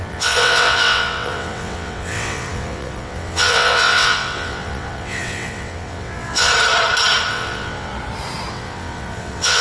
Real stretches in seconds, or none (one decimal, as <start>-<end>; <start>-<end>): 6.5-7.3; 7.9-8.5